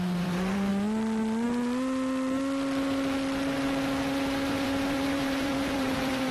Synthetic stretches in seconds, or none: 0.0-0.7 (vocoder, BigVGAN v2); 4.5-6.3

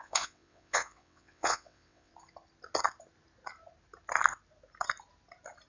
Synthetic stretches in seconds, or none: 0.0-2.1 (vocoder, WaveNeXt)

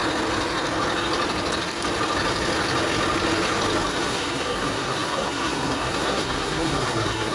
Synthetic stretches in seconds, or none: 4.0-7.3 (codec, SNAC)

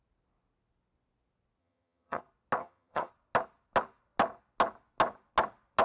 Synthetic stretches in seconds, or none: 1.6-2.2 (vocoder, HiFi-GAN); 2.6-3.1